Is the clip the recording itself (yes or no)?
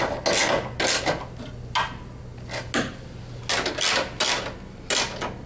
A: yes